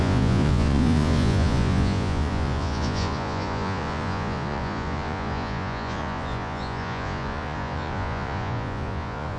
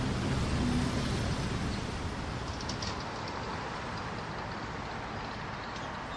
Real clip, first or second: second